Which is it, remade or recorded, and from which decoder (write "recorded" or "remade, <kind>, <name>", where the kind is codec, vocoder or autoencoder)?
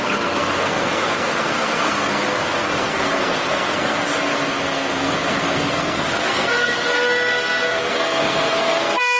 remade, codec, SNAC